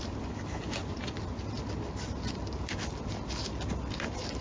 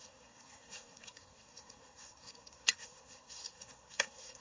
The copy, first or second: second